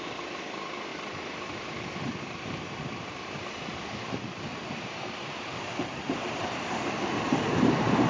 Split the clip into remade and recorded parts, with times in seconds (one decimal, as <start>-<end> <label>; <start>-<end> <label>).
0.0-8.1 remade